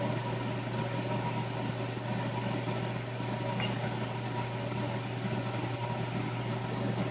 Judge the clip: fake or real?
real